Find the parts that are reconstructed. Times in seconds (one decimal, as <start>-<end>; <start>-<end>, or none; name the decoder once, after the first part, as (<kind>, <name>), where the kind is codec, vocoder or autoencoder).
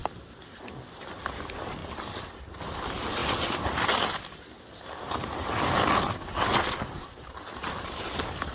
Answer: 3.2-7.5 (vocoder, BigVGAN v2)